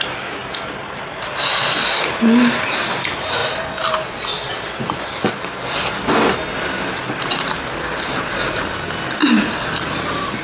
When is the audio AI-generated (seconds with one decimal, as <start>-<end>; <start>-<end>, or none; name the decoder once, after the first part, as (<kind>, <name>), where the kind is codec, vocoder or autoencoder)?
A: none